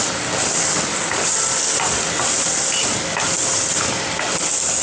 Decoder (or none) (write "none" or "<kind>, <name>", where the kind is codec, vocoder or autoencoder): none